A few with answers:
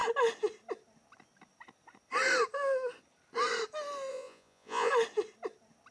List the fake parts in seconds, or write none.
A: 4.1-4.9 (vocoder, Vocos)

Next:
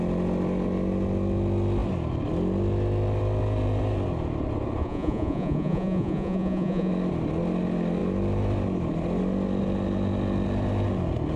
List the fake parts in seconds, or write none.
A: 4.8-6.9 (vocoder, Vocos)

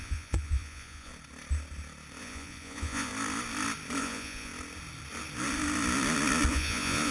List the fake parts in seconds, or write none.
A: 0.0-1.1 (vocoder, Vocos); 2.2-3.1; 4.0-4.5; 6.5-7.1

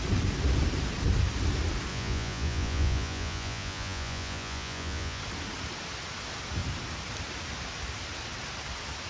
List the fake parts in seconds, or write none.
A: 1.9-5.2 (vocoder, Vocos)